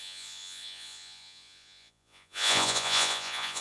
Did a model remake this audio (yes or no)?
yes